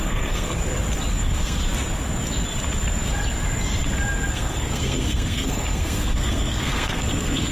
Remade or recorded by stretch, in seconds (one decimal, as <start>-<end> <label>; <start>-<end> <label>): 0.0-0.6 remade; 0.6-1.1 recorded; 1.1-1.6 remade; 1.6-4.3 recorded; 4.3-7.5 remade